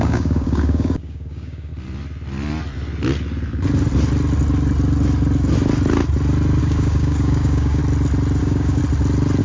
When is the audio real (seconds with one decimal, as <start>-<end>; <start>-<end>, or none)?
1.7-6.6; 7.8-8.4; 8.8-9.4